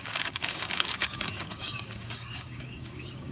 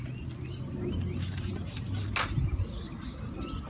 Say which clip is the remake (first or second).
first